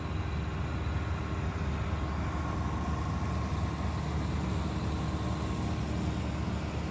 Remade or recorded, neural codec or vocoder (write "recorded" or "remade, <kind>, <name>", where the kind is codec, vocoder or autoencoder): recorded